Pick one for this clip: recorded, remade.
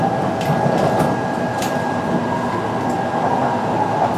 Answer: recorded